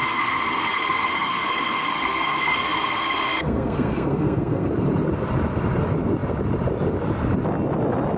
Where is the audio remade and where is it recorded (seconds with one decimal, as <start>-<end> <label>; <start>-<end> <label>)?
0.0-4.7 remade; 4.7-8.2 recorded